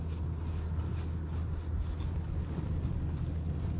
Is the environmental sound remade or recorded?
recorded